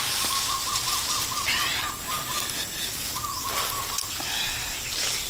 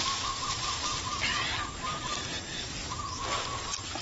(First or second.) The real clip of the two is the first